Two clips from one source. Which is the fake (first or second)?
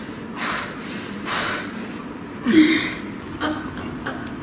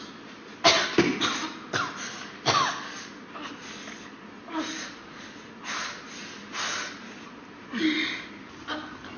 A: first